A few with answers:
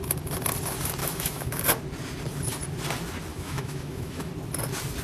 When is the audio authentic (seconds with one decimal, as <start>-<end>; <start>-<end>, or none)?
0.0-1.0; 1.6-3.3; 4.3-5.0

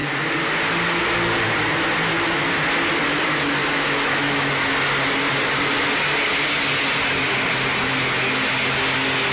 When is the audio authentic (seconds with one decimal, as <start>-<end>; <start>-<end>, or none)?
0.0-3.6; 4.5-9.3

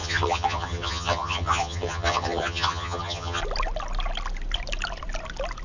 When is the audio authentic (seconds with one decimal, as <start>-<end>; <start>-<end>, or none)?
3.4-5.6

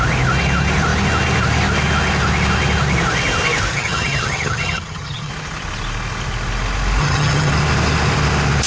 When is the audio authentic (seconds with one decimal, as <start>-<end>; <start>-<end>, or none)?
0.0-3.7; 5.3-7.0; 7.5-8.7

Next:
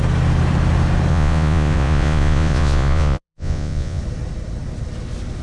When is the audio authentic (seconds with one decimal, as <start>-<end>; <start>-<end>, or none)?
0.0-1.1; 4.0-5.4

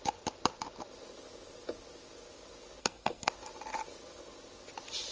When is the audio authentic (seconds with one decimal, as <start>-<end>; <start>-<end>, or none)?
0.0-2.8; 3.3-5.1

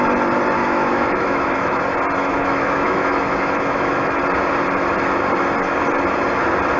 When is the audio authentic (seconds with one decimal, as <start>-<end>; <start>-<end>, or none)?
0.0-0.6; 1.8-2.2; 4.2-6.8

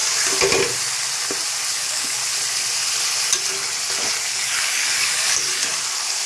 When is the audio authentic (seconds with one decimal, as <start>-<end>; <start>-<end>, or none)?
0.0-1.7; 2.2-4.2; 5.6-6.3